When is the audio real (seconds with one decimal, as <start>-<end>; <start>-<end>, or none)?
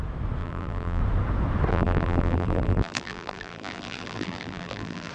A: 0.0-0.4; 1.0-1.7